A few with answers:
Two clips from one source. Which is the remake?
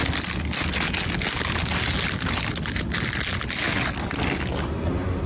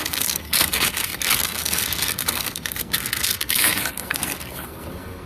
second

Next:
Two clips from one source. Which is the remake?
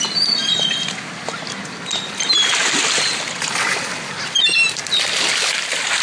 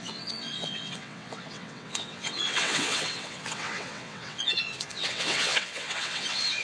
second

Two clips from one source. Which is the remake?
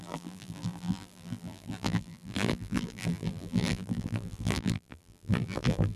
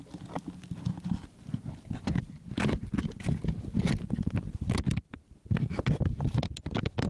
first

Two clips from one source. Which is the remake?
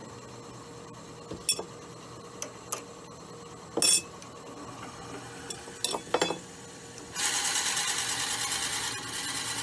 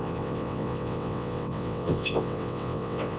second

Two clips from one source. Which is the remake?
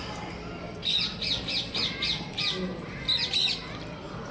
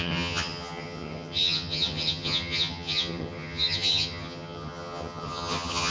second